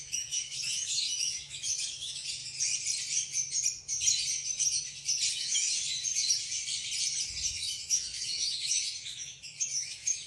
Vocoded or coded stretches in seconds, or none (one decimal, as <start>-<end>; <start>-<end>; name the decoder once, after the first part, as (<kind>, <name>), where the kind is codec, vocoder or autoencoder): 0.0-2.4 (autoencoder, DAC-VAE); 5.3-5.8; 7.5-10.3